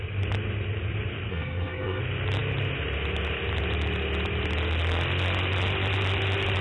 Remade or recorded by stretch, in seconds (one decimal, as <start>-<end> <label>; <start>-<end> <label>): 0.0-1.3 recorded; 1.3-2.0 remade; 2.0-6.6 recorded